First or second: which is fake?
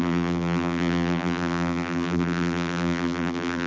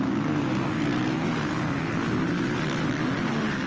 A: first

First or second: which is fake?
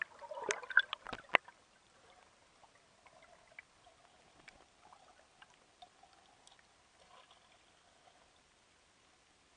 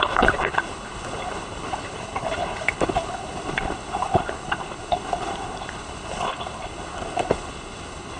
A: second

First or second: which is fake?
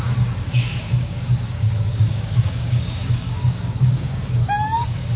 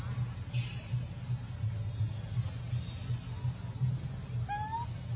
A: first